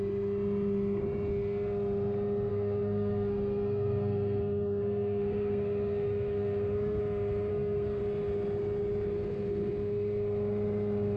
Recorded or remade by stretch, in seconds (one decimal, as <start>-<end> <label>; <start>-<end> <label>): 0.0-2.5 recorded; 2.5-7.0 remade; 7.0-7.5 recorded; 7.5-8.0 remade; 8.0-11.2 recorded